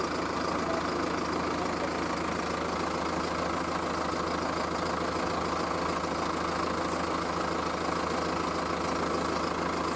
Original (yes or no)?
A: yes